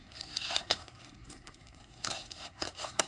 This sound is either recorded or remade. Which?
remade